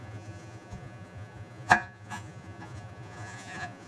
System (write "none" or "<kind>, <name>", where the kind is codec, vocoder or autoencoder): vocoder, Vocos